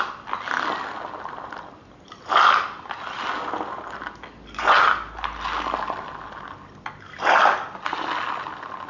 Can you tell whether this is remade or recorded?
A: recorded